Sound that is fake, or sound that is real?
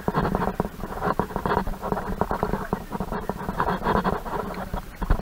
real